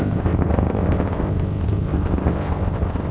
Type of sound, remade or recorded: remade